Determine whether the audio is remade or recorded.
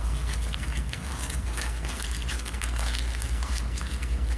remade